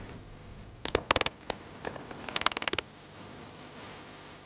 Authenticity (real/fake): real